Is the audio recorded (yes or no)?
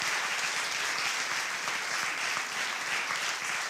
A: yes